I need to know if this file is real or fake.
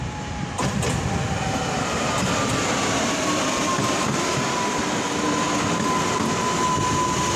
real